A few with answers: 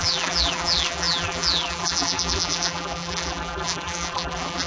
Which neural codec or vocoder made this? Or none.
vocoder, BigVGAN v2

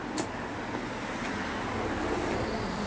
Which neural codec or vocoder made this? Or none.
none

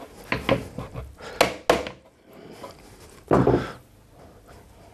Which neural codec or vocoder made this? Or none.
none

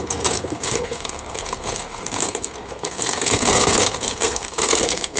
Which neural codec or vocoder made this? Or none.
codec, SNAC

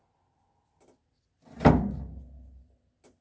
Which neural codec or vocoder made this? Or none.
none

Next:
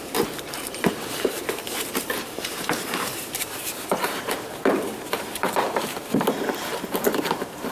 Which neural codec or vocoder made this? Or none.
vocoder, BigVGAN v2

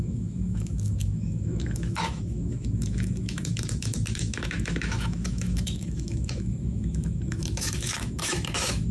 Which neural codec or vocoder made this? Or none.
autoencoder, DAC-VAE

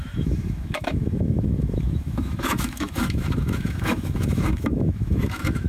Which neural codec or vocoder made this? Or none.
autoencoder, DAC-VAE